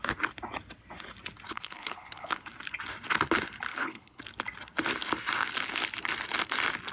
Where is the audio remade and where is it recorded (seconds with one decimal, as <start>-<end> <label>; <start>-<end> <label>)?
0.0-1.5 recorded; 1.5-2.4 remade; 2.4-3.7 recorded; 3.7-4.2 remade; 4.2-6.9 recorded